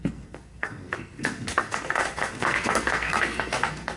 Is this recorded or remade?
remade